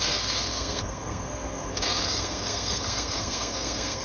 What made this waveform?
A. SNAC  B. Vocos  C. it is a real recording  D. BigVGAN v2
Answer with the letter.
A